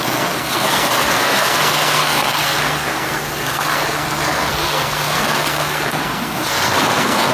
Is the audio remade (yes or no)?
yes